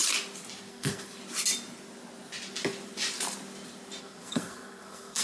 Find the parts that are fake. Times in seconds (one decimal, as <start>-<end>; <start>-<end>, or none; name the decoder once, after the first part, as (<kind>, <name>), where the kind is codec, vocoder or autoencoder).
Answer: 0.7-1.2 (codec, SNAC); 4.0-5.2